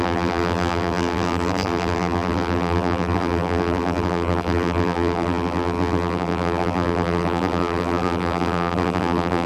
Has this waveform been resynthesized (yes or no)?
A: yes